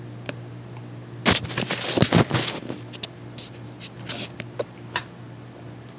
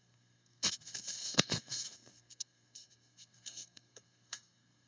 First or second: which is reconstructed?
second